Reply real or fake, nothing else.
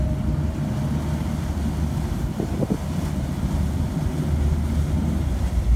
real